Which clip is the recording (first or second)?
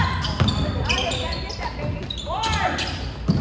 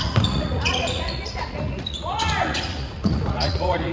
first